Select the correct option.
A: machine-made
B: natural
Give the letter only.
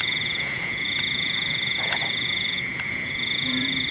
A